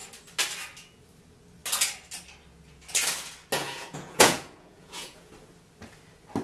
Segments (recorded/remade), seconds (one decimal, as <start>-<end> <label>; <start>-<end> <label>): 0.0-3.6 recorded; 3.6-5.3 remade; 5.3-6.4 recorded